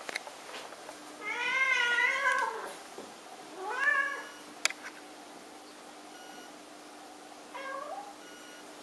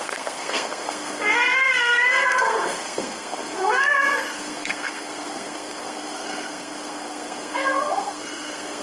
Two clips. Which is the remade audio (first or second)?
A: second